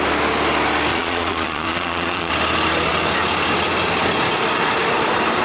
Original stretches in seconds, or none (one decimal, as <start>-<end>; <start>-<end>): 0.0-0.9; 2.3-5.4